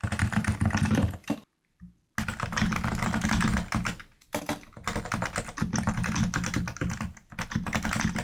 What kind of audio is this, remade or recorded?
recorded